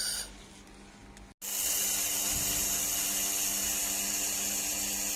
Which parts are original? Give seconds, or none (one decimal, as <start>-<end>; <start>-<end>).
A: 0.0-5.2